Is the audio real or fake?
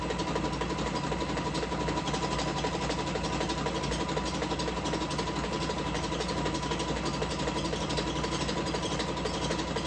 real